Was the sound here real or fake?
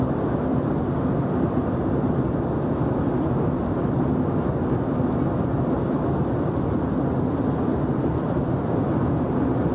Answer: real